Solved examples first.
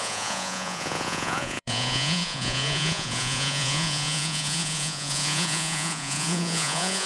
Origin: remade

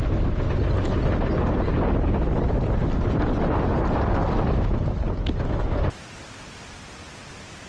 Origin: recorded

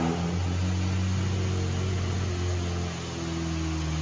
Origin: recorded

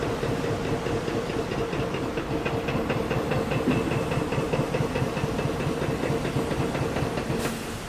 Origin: recorded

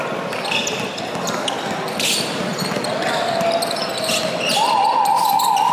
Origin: recorded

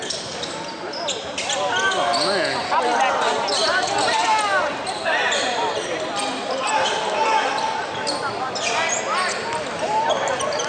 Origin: recorded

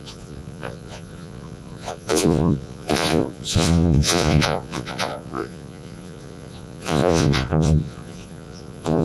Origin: remade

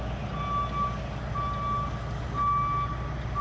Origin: recorded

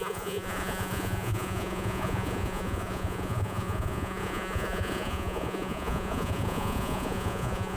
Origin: remade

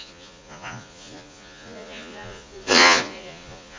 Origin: remade